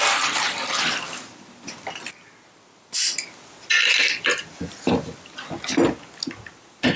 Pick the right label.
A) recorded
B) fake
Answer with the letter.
A